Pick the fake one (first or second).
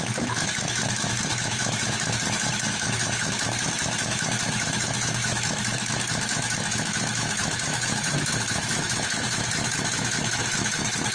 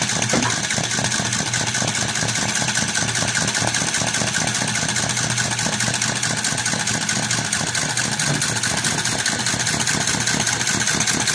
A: first